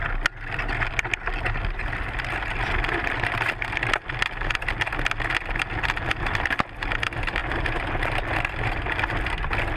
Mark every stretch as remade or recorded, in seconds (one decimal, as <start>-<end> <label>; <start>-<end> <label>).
0.0-9.8 recorded